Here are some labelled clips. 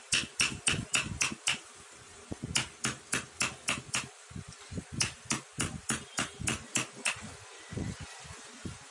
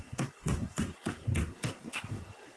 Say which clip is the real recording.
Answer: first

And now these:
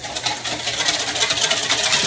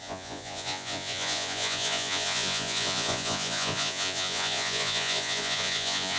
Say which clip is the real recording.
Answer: first